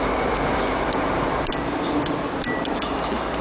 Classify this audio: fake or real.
fake